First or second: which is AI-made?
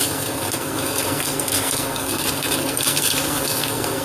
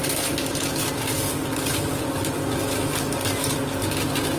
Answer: first